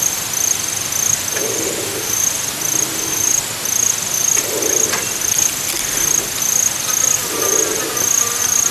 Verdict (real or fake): real